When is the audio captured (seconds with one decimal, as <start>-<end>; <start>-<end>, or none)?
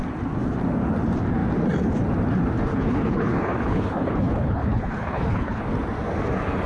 0.0-2.7; 5.6-6.7